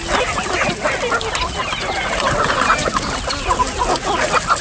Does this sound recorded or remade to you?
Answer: recorded